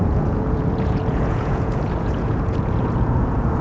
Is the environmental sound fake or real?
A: fake